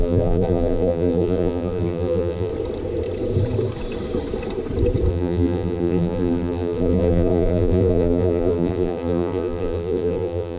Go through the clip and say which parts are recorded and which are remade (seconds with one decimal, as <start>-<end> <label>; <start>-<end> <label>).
0.0-2.5 remade; 2.5-5.1 recorded; 5.1-10.6 remade